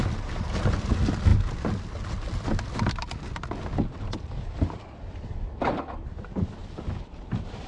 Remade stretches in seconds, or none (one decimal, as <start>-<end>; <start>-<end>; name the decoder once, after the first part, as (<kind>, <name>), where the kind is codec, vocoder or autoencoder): none